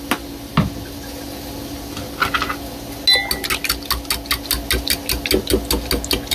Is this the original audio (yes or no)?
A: yes